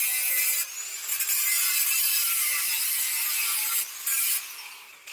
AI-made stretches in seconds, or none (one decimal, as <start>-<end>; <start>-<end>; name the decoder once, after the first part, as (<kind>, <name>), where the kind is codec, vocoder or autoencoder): 1.1-4.2 (vocoder, BigVGAN v2)